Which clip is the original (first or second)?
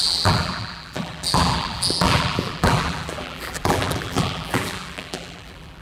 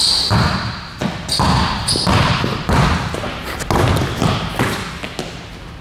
second